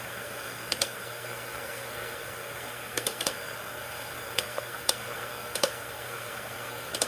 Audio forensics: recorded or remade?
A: remade